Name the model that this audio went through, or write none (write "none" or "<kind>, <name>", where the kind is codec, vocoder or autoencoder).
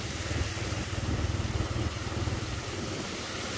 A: none